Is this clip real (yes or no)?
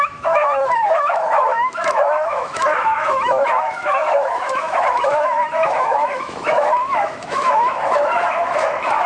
no